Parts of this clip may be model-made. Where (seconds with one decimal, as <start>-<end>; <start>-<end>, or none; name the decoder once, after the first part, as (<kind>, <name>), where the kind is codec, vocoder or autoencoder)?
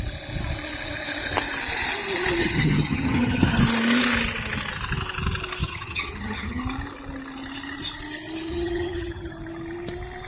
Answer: 2.4-3.6 (vocoder, HiFi-GAN); 5.6-6.6; 8.5-9.3